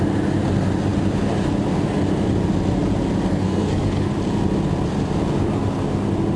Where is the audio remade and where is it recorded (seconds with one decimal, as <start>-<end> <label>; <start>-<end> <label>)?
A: 0.0-3.3 recorded; 3.3-4.1 remade; 4.1-6.4 recorded